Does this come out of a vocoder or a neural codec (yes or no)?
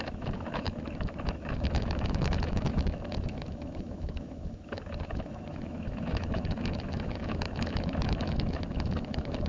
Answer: yes